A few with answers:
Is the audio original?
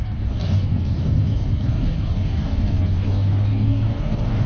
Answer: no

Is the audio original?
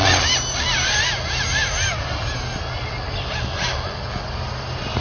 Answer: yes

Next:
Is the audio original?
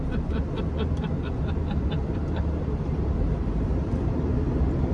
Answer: yes